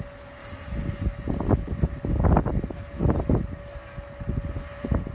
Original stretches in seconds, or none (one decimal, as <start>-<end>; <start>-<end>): 0.0-5.1